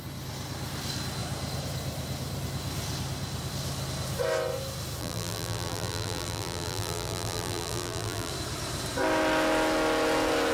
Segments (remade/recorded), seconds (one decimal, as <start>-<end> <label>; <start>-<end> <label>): 0.0-5.0 recorded; 5.0-8.3 remade; 8.3-10.5 recorded